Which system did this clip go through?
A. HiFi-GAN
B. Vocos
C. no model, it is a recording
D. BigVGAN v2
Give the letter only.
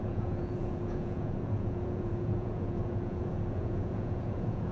B